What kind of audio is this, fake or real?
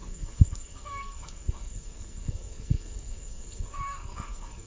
fake